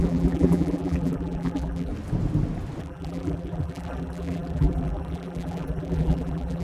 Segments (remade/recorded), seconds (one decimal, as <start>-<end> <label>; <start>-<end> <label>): 0.0-1.9 remade; 1.9-2.8 recorded; 2.8-6.6 remade

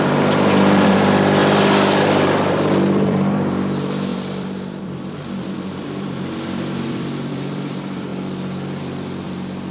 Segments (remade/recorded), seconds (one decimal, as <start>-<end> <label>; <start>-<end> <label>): 0.0-1.4 remade; 1.4-2.0 recorded; 2.0-8.1 remade; 8.1-8.8 recorded; 8.8-9.7 remade

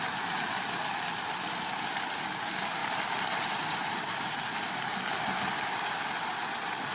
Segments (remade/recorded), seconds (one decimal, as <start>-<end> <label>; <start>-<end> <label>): 0.0-2.8 recorded; 2.8-4.7 remade; 4.7-6.9 recorded